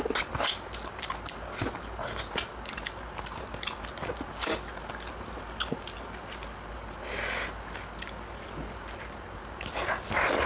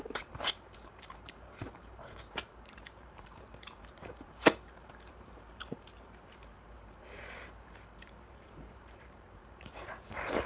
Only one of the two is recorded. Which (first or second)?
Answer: first